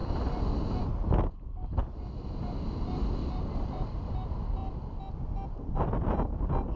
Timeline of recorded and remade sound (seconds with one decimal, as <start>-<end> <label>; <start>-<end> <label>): 0.0-6.8 recorded